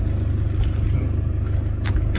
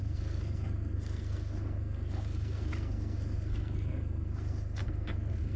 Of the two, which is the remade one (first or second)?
second